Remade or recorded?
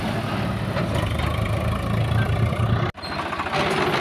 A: recorded